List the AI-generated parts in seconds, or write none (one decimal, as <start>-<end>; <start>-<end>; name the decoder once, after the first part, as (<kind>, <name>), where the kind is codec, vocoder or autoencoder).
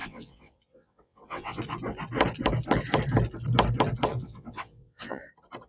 0.0-1.6 (vocoder, WaveNeXt); 4.1-5.3